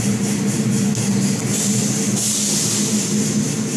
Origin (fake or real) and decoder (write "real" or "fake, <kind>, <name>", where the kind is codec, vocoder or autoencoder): real